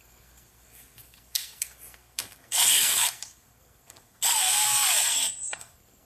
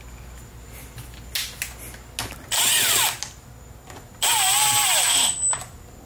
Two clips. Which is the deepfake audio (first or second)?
first